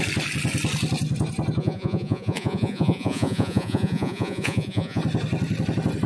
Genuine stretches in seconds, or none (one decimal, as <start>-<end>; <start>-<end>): 0.0-1.6; 5.0-6.1